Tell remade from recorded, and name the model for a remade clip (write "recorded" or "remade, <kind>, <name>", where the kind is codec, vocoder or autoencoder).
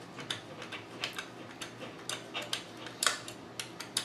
recorded